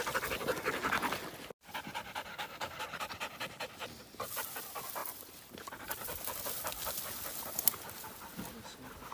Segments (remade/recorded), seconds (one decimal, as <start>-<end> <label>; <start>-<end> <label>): 0.0-2.3 recorded; 2.3-2.8 remade; 2.8-9.1 recorded